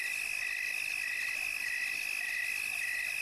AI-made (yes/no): no